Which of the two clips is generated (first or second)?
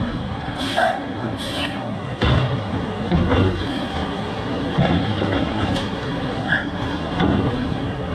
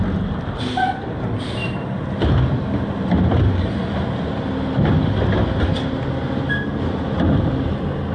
first